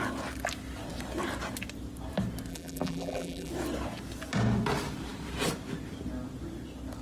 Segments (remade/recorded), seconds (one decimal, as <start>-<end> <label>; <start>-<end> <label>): 0.0-2.5 recorded; 2.5-3.5 remade; 3.5-7.0 recorded